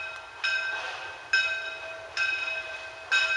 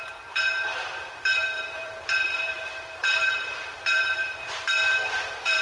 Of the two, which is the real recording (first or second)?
first